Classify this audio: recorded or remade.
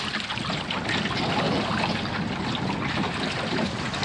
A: recorded